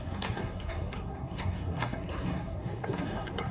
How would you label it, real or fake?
fake